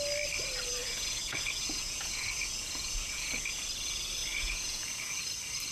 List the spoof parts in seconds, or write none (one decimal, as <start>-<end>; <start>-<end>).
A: 0.8-3.6; 4.2-5.2